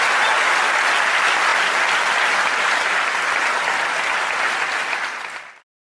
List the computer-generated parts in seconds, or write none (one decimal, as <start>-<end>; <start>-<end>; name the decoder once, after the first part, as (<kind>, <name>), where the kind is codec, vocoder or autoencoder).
none